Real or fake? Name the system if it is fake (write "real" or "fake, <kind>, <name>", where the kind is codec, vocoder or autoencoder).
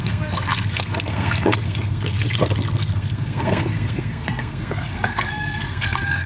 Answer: fake, codec, SNAC